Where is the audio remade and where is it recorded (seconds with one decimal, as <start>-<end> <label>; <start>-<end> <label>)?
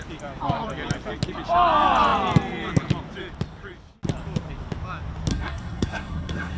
0.0-5.3 recorded; 5.3-6.6 remade